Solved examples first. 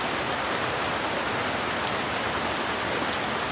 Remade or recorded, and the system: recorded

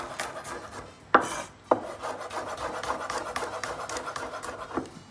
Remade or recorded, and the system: recorded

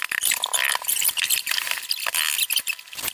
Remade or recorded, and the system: recorded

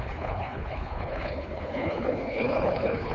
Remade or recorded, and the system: remade, codec, HILCodec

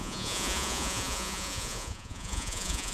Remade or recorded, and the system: remade, vocoder, Vocos